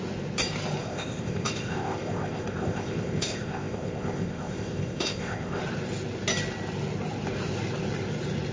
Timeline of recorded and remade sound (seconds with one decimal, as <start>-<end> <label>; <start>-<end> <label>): 0.0-0.8 recorded; 0.8-5.6 remade; 5.6-8.5 recorded